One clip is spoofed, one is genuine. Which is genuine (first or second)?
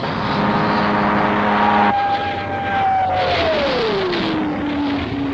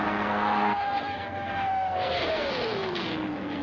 first